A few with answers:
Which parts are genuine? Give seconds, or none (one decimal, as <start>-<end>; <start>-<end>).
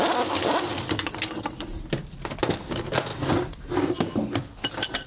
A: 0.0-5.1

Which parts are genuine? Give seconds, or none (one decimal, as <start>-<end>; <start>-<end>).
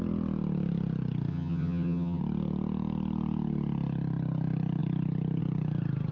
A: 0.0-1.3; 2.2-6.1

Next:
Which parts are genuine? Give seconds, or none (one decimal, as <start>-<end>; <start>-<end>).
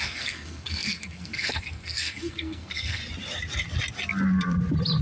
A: 3.0-5.0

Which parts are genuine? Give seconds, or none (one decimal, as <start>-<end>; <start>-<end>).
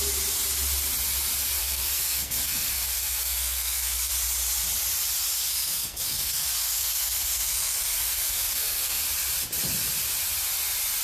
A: 0.0-1.6; 4.1-5.4; 9.0-11.0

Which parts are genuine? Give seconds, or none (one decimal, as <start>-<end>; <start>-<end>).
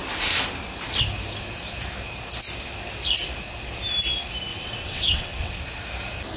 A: 0.0-4.5; 5.5-6.4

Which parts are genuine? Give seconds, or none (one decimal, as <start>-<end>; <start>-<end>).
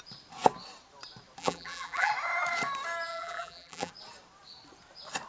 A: 0.0-1.4; 2.1-3.1; 3.9-5.3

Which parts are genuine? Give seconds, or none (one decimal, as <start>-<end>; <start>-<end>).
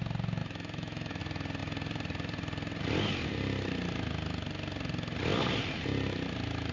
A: 0.0-0.4; 1.2-6.7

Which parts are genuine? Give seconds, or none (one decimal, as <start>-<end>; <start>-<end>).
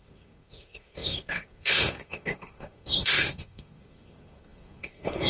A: none